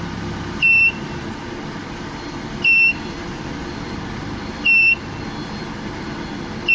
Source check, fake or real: fake